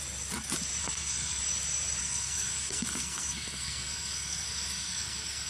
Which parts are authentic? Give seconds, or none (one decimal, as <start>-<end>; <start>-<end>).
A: 0.0-0.8; 1.4-2.0